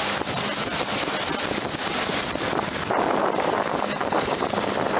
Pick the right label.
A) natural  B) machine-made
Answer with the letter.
A